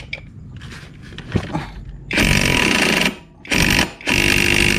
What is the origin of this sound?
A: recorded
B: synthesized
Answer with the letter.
A